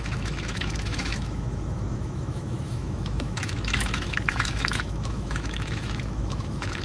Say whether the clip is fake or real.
fake